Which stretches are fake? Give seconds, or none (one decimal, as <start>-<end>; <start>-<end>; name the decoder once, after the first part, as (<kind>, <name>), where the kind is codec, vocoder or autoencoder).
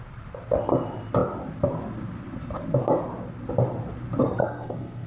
4.4-5.1 (codec, SNAC)